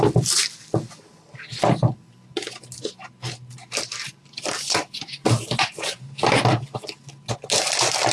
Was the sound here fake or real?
real